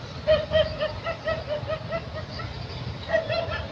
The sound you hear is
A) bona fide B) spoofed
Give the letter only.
A